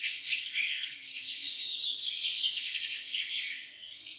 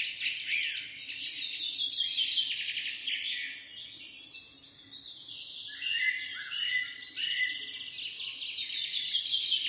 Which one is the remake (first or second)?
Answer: first